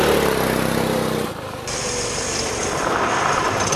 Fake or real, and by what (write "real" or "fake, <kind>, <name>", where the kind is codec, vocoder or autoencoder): real